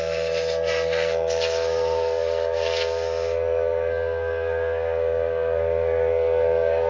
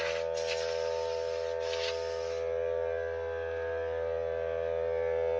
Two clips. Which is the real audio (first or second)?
second